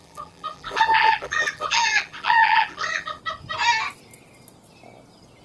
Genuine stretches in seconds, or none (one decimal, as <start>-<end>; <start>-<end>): 3.2-5.4